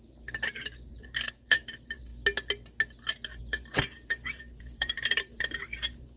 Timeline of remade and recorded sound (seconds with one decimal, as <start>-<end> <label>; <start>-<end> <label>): 0.0-2.1 remade; 2.1-3.4 recorded; 3.4-6.2 remade